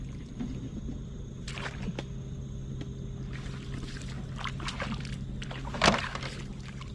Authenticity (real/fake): real